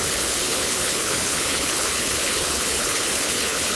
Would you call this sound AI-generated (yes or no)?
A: yes